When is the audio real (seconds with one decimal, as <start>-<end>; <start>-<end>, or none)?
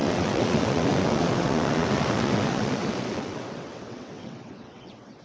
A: none